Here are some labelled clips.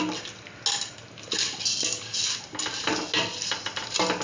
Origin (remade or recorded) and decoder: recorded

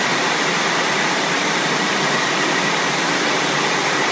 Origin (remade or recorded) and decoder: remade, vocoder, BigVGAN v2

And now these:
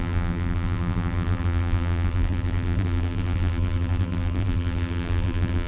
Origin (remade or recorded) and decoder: remade, vocoder, BigVGAN v2